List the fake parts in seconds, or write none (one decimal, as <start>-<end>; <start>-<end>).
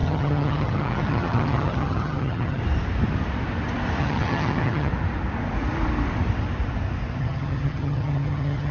0.0-2.6; 4.0-4.9; 7.2-8.7